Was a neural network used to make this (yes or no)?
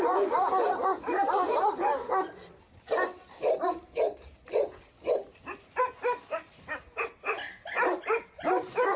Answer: no